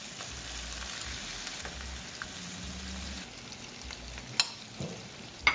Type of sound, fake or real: real